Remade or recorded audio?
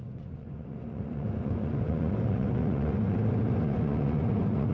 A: remade